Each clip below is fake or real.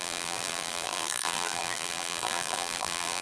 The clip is fake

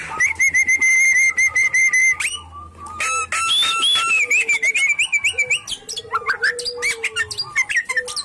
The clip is real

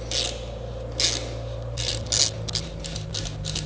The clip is real